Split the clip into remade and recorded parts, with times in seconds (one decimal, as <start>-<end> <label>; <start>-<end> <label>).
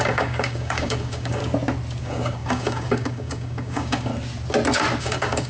0.0-1.4 remade; 1.4-2.0 recorded; 2.0-4.1 remade; 4.1-5.0 recorded; 5.0-5.5 remade